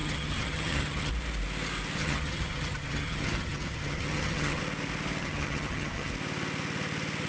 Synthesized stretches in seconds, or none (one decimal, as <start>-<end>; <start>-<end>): 0.0-1.1; 2.0-4.6; 5.2-6.1